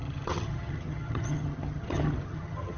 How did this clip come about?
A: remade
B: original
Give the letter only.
A